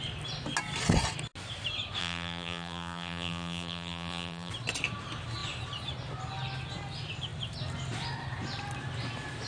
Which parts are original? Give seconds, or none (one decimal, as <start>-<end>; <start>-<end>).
0.0-2.0; 4.5-9.5